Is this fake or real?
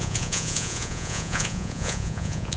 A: fake